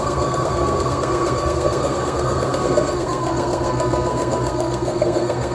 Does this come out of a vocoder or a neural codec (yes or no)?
yes